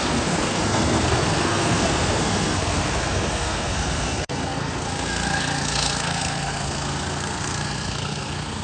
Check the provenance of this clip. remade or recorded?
remade